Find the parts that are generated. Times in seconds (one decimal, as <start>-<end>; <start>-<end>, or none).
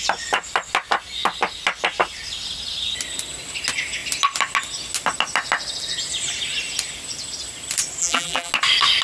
8.0-8.5